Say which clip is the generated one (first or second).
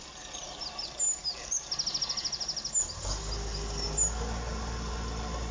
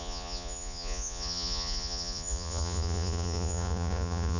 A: second